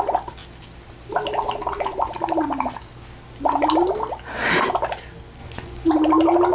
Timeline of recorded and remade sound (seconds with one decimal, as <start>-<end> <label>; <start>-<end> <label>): 0.0-5.4 recorded; 5.4-5.9 remade; 5.9-6.5 recorded